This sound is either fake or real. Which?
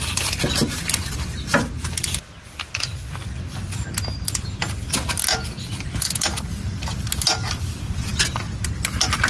real